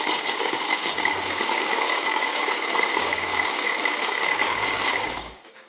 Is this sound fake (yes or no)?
yes